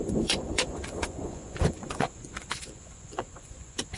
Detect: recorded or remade remade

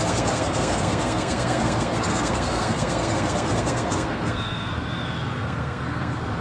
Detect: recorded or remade remade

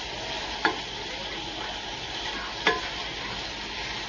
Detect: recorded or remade recorded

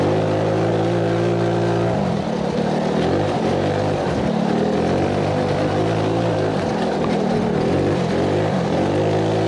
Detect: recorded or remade recorded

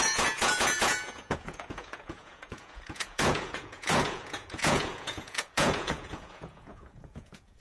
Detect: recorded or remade remade